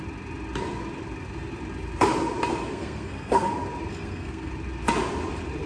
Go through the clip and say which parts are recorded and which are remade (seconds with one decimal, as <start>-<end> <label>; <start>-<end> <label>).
0.0-2.7 recorded; 2.7-3.5 remade; 3.5-3.9 recorded; 3.9-4.5 remade; 4.5-5.7 recorded